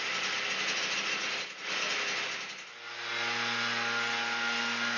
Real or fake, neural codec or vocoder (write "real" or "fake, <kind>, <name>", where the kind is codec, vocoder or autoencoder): real